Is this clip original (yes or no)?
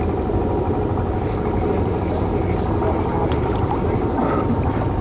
yes